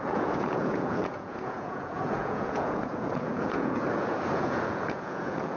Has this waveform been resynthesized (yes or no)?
yes